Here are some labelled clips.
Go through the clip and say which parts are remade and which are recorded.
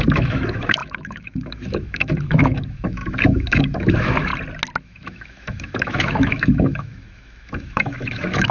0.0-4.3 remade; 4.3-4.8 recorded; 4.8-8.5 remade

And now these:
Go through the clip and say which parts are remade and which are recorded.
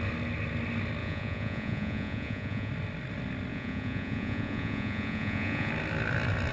0.0-1.0 recorded; 1.0-2.7 remade; 2.7-3.5 recorded; 3.5-5.7 remade; 5.7-6.5 recorded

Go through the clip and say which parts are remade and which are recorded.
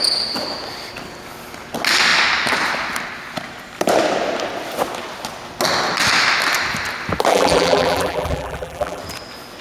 0.0-7.3 recorded; 7.3-9.0 remade; 9.0-9.6 recorded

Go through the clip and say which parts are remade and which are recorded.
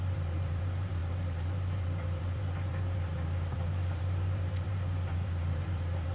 0.0-6.1 remade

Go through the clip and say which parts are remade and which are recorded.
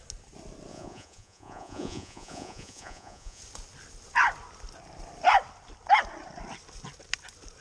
0.0-0.7 recorded; 0.7-3.4 remade; 3.4-7.6 recorded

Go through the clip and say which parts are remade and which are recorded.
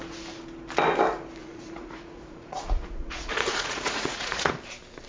0.0-1.4 recorded; 1.4-4.5 remade; 4.5-5.1 recorded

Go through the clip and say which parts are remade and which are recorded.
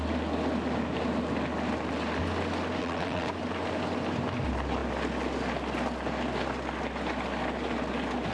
0.0-2.8 recorded; 2.8-3.3 remade; 3.3-8.3 recorded